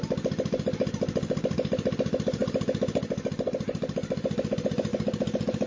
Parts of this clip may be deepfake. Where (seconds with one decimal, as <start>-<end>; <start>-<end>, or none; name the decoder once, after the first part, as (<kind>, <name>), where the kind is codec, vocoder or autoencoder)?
none

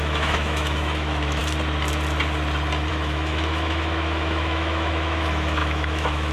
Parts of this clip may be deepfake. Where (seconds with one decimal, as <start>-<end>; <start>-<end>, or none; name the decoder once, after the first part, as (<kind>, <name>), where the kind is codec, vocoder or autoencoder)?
0.0-1.4 (autoencoder, DAC-VAE); 2.9-6.3

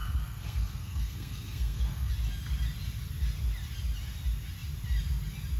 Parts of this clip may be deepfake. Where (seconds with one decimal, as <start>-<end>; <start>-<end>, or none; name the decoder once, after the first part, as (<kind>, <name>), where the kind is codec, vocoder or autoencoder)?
0.0-2.1 (codec, SNAC)

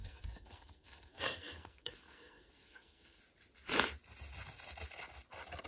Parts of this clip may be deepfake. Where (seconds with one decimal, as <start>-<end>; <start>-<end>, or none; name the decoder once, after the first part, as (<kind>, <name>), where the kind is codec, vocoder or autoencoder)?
0.0-3.2 (codec, SNAC)

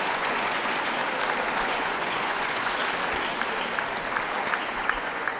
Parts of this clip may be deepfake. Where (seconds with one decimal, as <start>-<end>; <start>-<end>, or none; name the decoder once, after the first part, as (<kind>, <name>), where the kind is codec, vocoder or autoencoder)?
0.0-1.0 (vocoder, Vocos); 1.6-2.8; 4.6-5.4

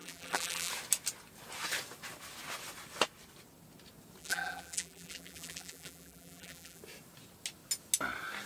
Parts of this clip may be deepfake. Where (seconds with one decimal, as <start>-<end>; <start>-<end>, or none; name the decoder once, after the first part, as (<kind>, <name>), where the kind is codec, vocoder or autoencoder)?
0.0-0.7 (vocoder, BigVGAN v2); 4.2-6.8

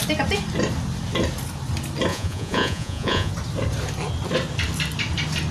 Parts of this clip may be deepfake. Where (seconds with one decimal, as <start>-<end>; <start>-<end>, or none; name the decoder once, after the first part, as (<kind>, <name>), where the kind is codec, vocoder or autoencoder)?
2.1-3.3 (vocoder, Vocos)